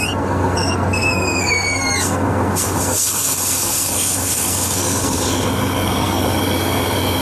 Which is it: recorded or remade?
remade